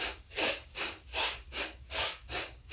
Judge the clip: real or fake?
fake